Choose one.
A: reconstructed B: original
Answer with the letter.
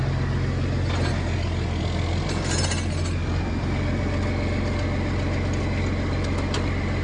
B